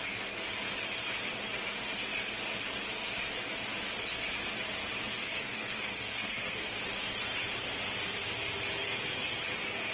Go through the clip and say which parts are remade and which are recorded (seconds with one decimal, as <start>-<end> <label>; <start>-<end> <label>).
0.0-5.2 recorded; 5.2-6.8 remade; 6.8-9.9 recorded